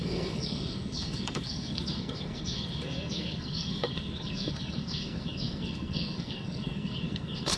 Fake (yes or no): yes